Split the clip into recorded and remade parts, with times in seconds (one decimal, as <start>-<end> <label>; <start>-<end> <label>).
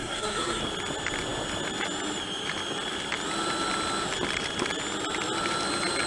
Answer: 0.0-0.6 remade; 0.6-6.1 recorded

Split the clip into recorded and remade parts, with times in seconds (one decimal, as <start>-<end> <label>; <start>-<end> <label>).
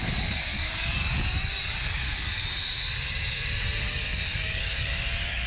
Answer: 0.0-2.4 remade; 2.4-3.8 recorded; 3.8-5.5 remade